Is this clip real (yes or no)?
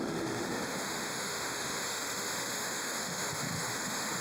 no